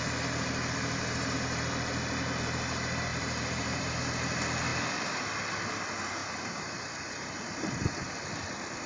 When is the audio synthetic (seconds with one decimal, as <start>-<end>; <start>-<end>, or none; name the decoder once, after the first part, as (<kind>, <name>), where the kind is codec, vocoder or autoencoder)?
3.1-4.0 (vocoder, BigVGAN v2); 6.2-7.7

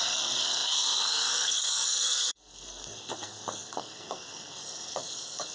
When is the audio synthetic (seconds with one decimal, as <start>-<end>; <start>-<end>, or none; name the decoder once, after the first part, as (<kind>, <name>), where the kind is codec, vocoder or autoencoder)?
0.0-5.5 (codec, SNAC)

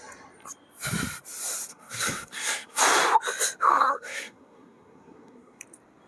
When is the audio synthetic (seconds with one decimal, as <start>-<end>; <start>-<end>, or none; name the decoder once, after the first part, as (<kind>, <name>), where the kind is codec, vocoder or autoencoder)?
1.7-2.8 (codec, SNAC); 3.7-5.6

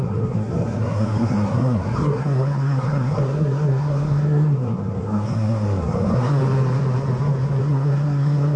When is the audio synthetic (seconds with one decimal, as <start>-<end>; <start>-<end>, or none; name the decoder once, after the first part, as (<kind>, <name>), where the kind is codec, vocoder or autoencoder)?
0.0-6.4 (codec, SNAC); 7.6-8.6